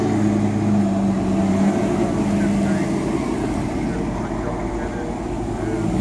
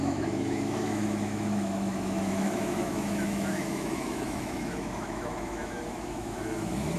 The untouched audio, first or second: first